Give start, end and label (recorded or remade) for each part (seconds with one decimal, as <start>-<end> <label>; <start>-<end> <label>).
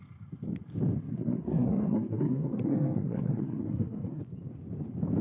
0.0-1.1 recorded; 1.1-4.2 remade; 4.2-5.2 recorded